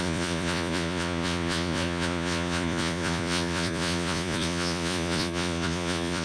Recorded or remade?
remade